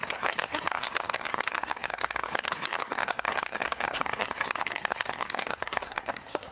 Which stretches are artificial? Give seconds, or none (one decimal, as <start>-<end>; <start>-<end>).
0.0-6.5